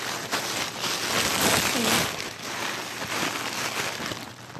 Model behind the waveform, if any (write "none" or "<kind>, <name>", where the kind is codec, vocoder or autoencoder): none